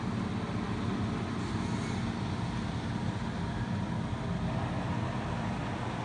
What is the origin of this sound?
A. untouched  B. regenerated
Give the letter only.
A